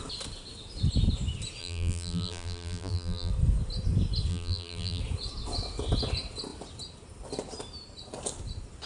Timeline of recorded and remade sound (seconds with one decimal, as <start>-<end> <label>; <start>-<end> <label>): 0.0-1.6 recorded; 1.6-3.3 remade; 3.3-4.3 recorded; 4.3-5.0 remade; 5.0-8.9 recorded

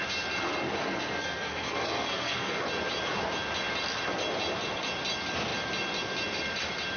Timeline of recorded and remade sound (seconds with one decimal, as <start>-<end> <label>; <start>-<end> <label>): 0.0-0.8 recorded; 0.8-2.6 remade; 2.6-7.0 recorded

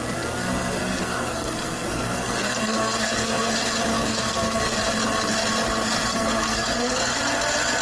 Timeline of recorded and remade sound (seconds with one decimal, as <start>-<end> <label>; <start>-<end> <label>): 0.0-0.8 recorded; 0.8-3.5 remade; 3.5-3.9 recorded; 3.9-4.8 remade; 4.8-6.1 recorded; 6.1-7.2 remade; 7.2-7.8 recorded

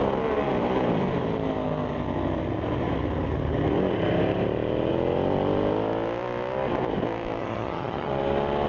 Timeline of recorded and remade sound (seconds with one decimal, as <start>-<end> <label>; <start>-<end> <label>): 0.0-7.4 recorded; 7.4-8.1 remade; 8.1-8.7 recorded

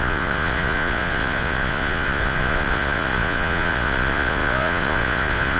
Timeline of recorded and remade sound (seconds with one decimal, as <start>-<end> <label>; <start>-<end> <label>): 0.0-5.6 remade